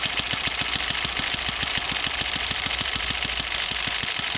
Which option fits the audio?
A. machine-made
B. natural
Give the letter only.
B